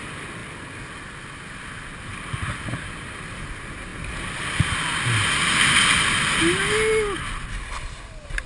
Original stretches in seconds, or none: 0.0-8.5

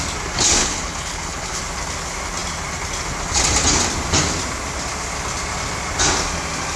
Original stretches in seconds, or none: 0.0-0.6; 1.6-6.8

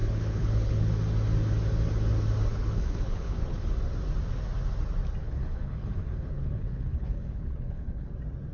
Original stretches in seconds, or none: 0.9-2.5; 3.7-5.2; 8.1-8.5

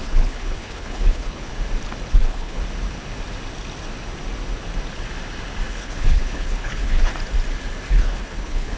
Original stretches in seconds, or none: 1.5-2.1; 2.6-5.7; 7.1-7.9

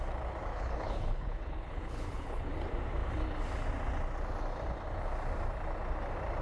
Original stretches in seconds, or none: 0.0-0.5; 2.5-6.4